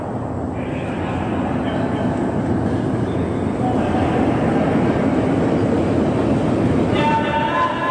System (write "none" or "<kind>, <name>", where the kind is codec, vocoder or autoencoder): none